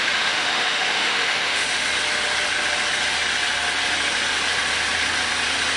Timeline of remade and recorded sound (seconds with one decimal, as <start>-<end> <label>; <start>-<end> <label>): 0.0-1.9 remade; 1.9-5.8 recorded